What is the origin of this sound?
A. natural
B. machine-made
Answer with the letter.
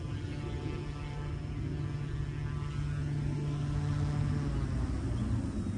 A